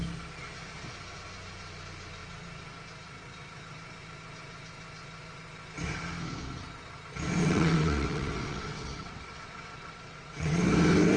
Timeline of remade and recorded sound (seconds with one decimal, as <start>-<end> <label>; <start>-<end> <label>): 0.0-7.4 recorded; 7.4-10.6 remade; 10.6-11.2 recorded